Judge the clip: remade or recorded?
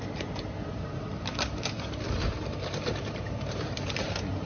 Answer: remade